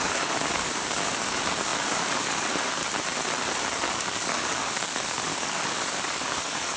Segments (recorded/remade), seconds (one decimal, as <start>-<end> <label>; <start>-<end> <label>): 0.0-2.8 remade; 2.8-3.8 recorded; 3.8-6.8 remade